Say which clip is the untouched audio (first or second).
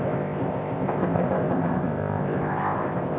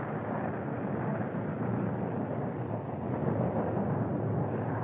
second